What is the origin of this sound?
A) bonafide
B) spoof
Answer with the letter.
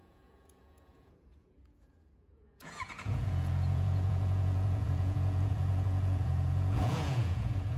B